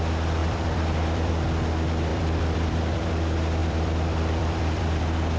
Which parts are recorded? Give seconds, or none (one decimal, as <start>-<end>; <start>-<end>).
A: 0.0-0.4; 1.3-2.1; 3.1-3.6; 5.0-5.4